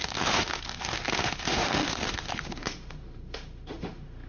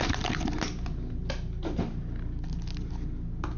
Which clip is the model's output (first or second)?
first